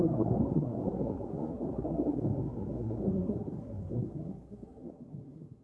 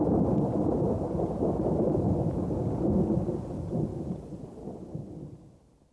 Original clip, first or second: second